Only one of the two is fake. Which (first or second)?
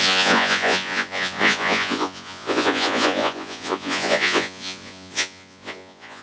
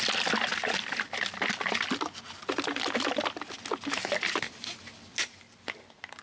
first